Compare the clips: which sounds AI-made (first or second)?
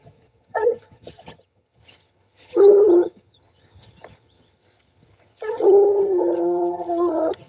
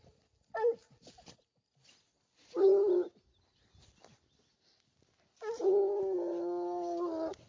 first